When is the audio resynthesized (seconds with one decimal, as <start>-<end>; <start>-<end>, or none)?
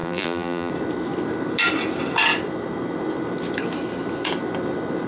0.0-0.7